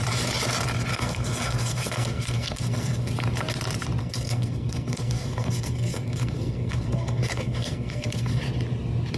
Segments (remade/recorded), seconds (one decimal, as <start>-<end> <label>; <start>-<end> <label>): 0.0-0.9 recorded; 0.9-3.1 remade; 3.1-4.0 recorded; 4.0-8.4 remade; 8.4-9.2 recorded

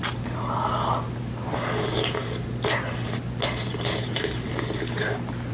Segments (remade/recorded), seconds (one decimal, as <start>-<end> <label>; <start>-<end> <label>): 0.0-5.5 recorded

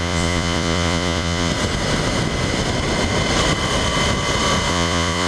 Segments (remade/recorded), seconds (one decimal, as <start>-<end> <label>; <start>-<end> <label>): 0.0-1.5 remade; 1.5-4.7 recorded; 4.7-5.3 remade